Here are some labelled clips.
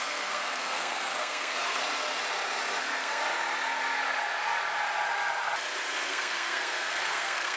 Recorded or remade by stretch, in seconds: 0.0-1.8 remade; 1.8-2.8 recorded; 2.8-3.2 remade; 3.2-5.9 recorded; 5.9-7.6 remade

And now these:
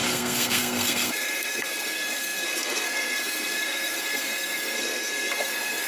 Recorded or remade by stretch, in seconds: 0.0-5.9 remade

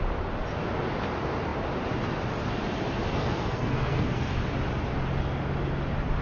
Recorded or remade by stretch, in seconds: 0.0-3.2 recorded; 3.2-4.4 remade; 4.4-6.2 recorded

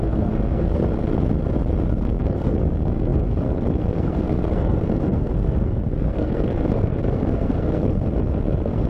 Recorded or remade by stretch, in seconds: 0.0-0.8 remade; 0.8-1.9 recorded; 1.9-8.9 remade

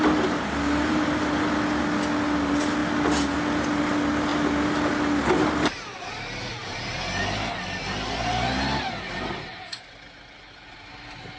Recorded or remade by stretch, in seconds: 0.0-11.4 recorded

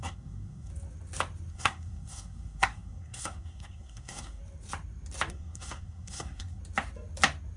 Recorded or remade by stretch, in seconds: 0.0-0.7 remade; 0.7-1.5 recorded; 1.5-4.4 remade; 4.4-5.3 recorded; 5.3-6.6 remade; 6.6-7.6 recorded

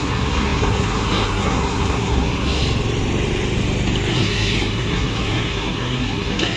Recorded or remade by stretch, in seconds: 0.0-2.6 remade; 2.6-4.1 recorded; 4.1-6.6 remade

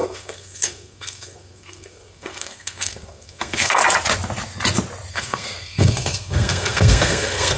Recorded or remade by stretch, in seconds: 0.0-3.8 remade; 3.8-5.1 recorded; 5.1-7.6 remade